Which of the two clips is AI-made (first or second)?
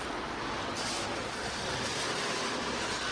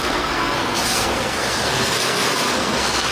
second